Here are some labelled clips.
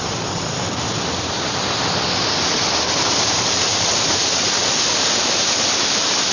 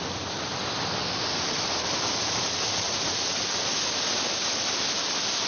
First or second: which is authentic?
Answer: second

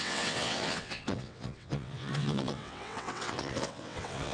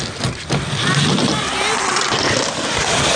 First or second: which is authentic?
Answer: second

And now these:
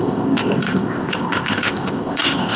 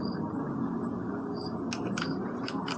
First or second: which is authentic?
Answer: second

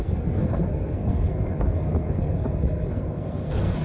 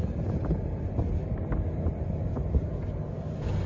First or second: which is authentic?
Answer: second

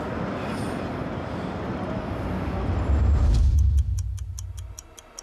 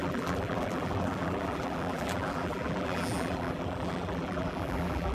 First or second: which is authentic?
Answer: first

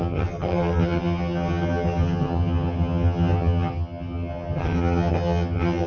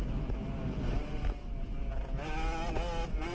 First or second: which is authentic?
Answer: second